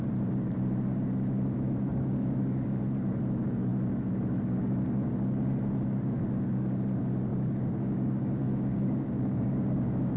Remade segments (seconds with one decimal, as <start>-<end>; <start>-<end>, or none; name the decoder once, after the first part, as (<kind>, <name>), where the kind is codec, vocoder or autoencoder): 1.9-2.8 (codec, DAC); 7.3-10.2